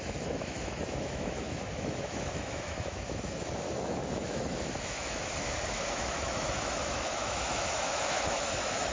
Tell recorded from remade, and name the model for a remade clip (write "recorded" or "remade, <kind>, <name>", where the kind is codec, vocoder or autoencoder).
remade, autoencoder, DAC-VAE